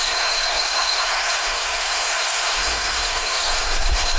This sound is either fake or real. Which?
fake